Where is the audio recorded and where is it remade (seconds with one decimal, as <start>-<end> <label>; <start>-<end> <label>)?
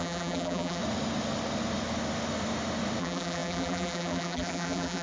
0.0-0.8 remade; 0.8-3.0 recorded; 3.0-5.0 remade